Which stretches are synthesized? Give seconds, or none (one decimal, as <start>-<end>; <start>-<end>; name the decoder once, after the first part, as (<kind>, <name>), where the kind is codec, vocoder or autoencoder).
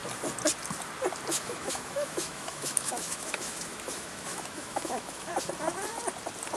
1.3-5.3 (autoencoder, DAC-VAE)